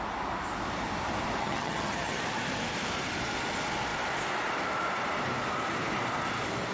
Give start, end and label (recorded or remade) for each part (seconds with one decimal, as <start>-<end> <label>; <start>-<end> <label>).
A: 0.0-1.4 recorded; 1.4-2.2 remade; 2.2-6.7 recorded